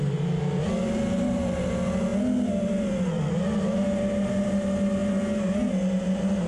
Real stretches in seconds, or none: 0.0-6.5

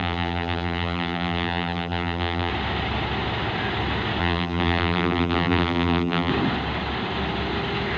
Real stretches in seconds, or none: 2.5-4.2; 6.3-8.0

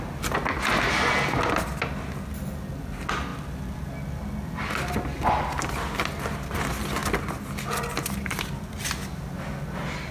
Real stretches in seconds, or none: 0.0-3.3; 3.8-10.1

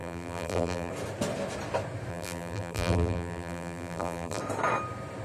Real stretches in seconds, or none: 0.9-2.1; 4.4-5.2

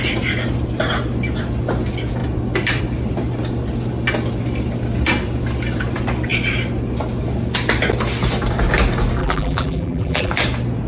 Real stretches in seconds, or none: 0.0-9.2; 10.3-10.9